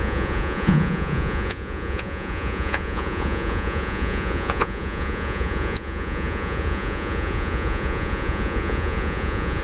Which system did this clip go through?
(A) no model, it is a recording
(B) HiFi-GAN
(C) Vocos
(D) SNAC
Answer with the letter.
C